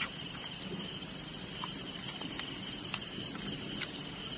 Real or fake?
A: fake